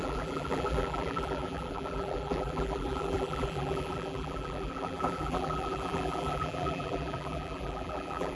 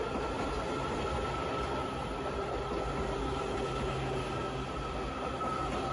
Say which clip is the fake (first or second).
first